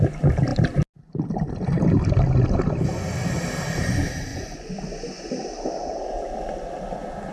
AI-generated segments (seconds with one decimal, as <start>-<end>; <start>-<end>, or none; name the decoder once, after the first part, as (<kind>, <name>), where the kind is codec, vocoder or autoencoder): 4.3-5.3 (vocoder, Vocos)